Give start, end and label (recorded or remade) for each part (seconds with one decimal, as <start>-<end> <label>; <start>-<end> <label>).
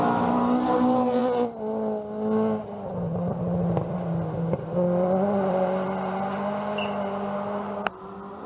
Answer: 0.0-8.5 recorded